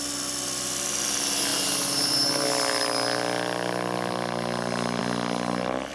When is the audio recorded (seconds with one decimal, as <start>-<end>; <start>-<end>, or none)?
0.0-5.9

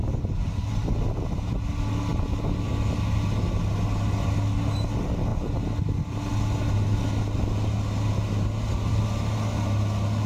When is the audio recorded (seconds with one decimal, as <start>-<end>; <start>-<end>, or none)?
0.0-10.3